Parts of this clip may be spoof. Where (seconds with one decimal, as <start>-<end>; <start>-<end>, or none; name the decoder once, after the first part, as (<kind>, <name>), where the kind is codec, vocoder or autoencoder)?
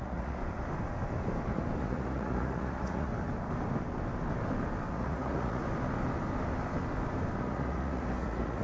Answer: 0.0-0.4 (vocoder, Vocos); 1.8-3.1; 4.9-5.6; 7.4-8.6